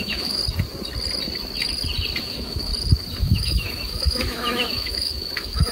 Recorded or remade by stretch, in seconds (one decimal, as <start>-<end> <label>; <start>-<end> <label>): 0.0-0.4 remade; 0.4-2.2 recorded; 2.2-2.7 remade; 2.7-3.2 recorded; 3.2-5.7 remade